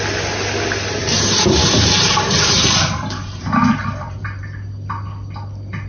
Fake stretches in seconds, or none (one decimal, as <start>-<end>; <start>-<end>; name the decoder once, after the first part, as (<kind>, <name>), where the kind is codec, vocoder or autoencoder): 1.0-4.4 (vocoder, BigVGAN v2)